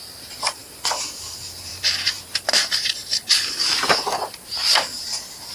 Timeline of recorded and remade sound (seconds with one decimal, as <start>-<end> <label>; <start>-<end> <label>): 0.0-1.7 recorded; 1.7-5.0 remade; 5.0-5.5 recorded